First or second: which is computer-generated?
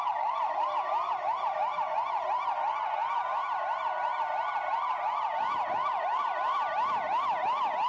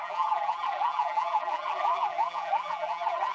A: second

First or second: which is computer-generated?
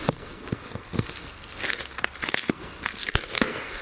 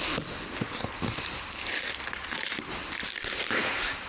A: first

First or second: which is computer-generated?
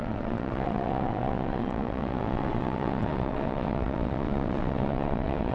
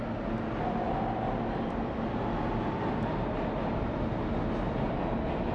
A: first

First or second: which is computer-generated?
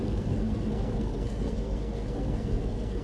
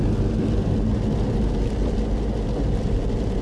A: first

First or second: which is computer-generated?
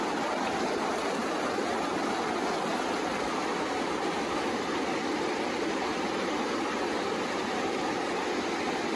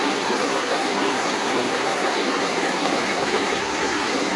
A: second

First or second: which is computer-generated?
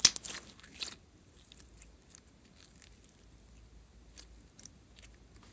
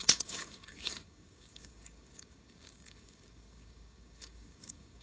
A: second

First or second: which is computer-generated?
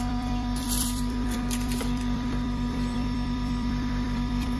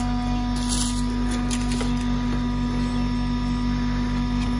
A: first